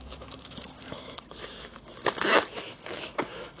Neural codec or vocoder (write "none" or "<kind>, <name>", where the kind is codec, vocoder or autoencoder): autoencoder, DAC-VAE